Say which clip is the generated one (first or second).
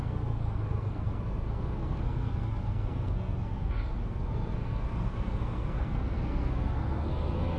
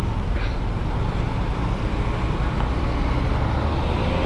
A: first